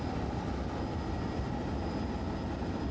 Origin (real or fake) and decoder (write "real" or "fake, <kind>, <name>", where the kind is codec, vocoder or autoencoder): real